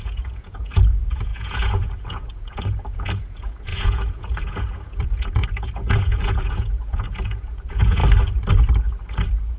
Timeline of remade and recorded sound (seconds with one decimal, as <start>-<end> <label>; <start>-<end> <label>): 0.0-8.0 remade; 8.0-9.6 recorded

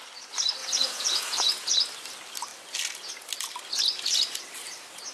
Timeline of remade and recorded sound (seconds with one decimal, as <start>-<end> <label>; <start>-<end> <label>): 0.0-0.6 recorded; 0.6-1.7 remade; 1.7-5.1 recorded

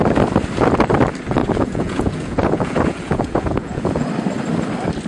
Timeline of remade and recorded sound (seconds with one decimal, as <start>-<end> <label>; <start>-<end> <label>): 0.0-1.4 recorded; 1.4-4.1 remade; 4.1-5.1 recorded

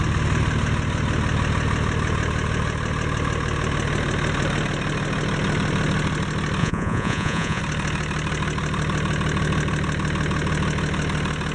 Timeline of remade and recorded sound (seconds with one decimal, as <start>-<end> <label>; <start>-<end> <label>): 0.0-6.6 recorded; 6.6-7.6 remade; 7.6-11.5 recorded

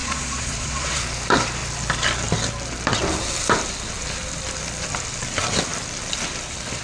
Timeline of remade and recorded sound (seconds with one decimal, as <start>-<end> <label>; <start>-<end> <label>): 0.0-1.0 remade; 1.0-6.8 recorded